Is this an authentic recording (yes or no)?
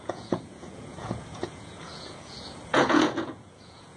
no